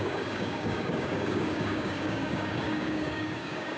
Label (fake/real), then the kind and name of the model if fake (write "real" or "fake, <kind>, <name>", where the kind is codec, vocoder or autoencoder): fake, codec, DAC